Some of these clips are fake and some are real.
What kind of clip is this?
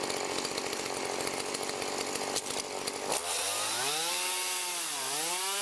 real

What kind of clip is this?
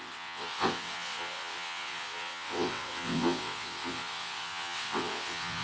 fake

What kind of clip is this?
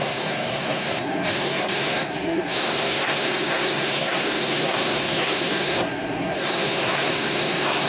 fake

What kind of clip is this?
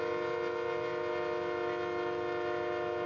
real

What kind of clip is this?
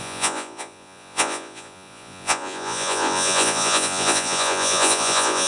fake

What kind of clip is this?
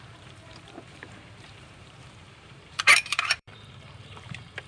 fake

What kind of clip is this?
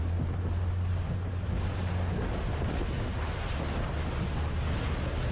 real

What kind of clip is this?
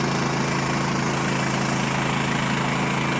real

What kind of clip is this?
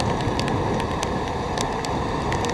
real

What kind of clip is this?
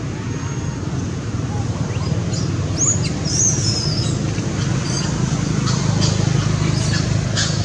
real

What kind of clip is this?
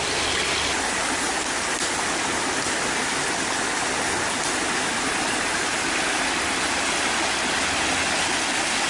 real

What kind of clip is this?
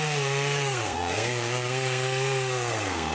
fake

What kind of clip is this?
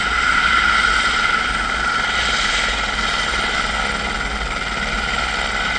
real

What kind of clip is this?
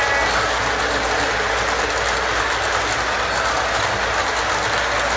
real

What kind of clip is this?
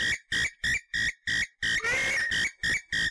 real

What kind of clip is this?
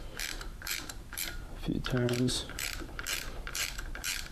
fake